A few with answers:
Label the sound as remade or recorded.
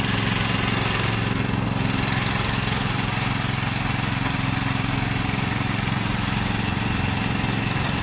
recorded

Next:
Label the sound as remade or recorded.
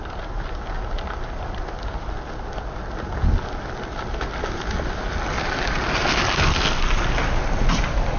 recorded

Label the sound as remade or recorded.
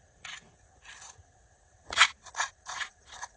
remade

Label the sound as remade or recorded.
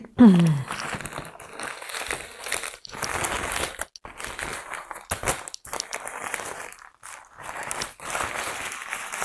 recorded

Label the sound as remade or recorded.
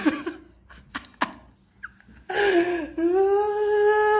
recorded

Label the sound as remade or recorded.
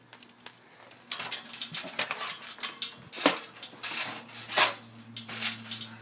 recorded